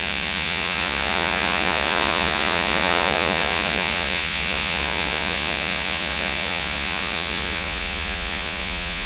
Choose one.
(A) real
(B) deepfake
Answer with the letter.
B